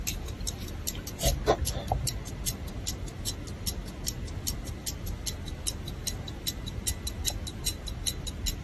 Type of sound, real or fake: real